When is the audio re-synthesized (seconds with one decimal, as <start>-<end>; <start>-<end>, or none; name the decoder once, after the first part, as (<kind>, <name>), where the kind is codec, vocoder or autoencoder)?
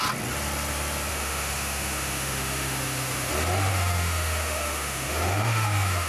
1.1-3.3 (autoencoder, DAC-VAE); 3.7-6.1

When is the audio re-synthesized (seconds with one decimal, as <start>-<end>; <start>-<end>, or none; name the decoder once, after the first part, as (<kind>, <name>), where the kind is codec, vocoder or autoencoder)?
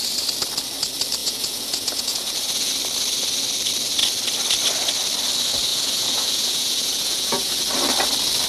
1.2-2.7 (vocoder, Vocos); 5.7-7.5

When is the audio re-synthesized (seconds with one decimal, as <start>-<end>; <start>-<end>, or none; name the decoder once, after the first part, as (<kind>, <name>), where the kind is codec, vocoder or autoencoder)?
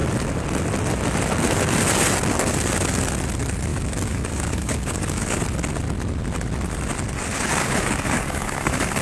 3.7-5.4 (codec, DAC); 7.5-9.0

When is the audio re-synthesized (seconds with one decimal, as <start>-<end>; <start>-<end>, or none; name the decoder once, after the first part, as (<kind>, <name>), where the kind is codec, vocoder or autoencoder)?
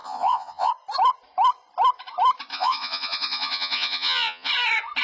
0.0-0.7 (vocoder, Vocos); 2.5-4.5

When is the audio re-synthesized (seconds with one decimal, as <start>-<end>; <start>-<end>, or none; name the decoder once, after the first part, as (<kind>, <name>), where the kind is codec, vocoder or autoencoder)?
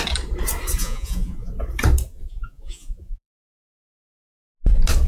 0.8-1.5 (vocoder, Vocos); 2.1-3.7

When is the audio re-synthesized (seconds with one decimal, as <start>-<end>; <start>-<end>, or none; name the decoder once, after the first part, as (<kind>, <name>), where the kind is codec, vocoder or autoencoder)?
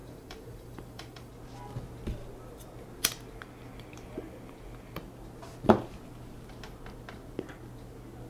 0.0-1.3 (vocoder, BigVGAN v2)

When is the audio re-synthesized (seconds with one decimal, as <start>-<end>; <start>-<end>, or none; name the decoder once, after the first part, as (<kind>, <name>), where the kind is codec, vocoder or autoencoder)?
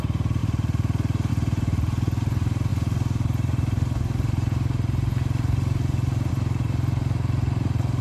none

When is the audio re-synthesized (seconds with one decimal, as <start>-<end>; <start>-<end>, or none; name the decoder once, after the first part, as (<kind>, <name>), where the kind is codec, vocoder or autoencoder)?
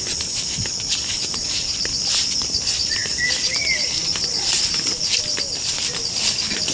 none